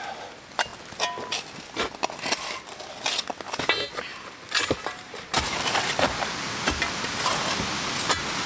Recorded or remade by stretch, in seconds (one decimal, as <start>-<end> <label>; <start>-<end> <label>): 0.0-4.1 recorded; 4.1-7.3 remade; 7.3-8.5 recorded